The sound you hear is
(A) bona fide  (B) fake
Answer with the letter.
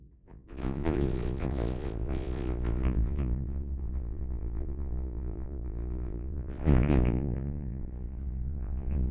B